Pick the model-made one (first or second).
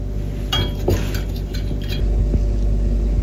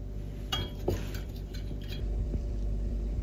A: second